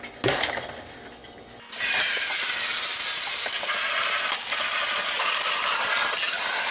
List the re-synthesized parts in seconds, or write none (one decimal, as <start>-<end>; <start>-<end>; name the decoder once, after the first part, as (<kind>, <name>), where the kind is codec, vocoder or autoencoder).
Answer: none